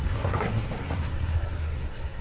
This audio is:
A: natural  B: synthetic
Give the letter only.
B